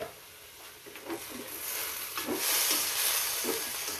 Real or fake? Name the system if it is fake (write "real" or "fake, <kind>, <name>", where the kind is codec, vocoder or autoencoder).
real